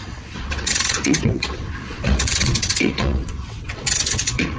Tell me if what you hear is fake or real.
fake